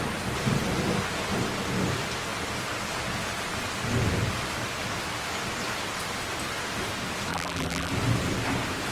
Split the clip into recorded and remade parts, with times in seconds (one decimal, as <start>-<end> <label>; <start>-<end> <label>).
0.0-7.3 recorded; 7.3-7.9 remade; 7.9-8.9 recorded